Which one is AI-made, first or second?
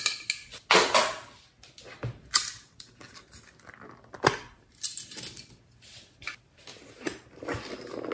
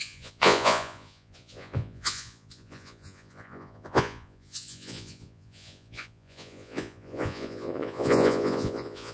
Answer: second